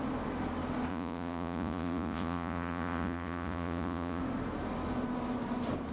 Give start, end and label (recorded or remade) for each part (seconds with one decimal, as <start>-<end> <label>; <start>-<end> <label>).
0.0-0.9 recorded; 0.9-4.2 remade; 4.2-5.9 recorded